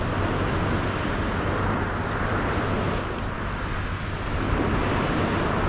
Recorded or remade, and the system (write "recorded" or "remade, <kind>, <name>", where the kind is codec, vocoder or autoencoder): recorded